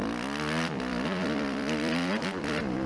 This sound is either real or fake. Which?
fake